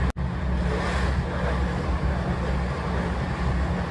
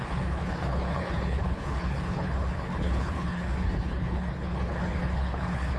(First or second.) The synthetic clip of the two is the second